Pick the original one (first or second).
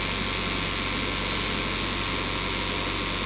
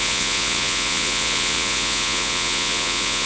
first